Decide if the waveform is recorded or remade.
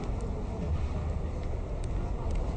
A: recorded